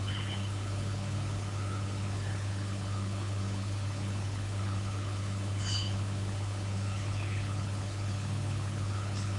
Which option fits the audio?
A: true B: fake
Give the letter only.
B